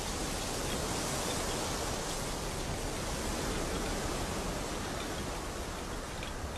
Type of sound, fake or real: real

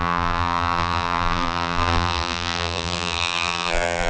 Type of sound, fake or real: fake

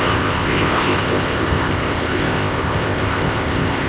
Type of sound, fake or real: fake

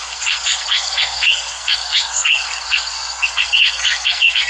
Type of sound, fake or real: fake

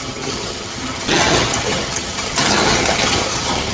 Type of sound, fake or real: fake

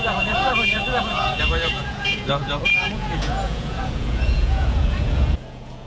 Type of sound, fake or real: fake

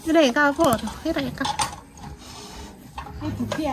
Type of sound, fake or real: real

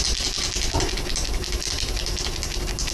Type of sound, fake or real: real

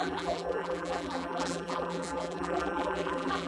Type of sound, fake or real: fake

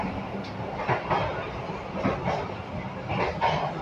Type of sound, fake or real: real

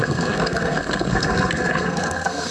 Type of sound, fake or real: fake